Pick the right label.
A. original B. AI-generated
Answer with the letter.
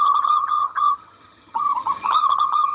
B